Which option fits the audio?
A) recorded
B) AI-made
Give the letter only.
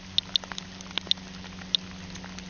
A